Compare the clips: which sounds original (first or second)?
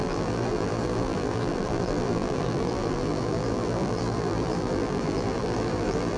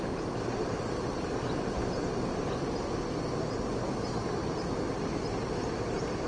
second